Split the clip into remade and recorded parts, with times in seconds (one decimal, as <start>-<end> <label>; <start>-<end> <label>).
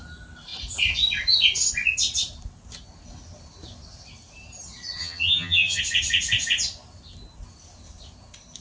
0.0-5.0 recorded; 5.0-5.8 remade; 5.8-8.6 recorded